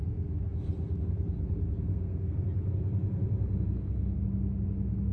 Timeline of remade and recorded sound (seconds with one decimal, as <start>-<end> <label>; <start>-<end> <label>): 0.0-1.9 recorded; 1.9-2.4 remade; 2.4-5.1 recorded